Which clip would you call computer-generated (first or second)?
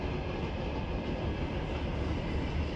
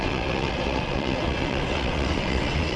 second